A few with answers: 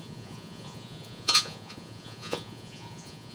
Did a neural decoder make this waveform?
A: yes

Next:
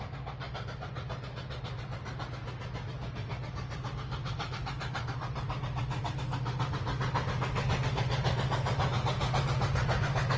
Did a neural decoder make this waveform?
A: no